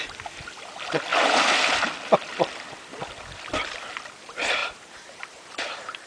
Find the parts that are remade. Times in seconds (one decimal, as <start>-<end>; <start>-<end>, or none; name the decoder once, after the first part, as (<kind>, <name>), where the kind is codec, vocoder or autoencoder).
4.6-6.1 (vocoder, BigVGAN v2)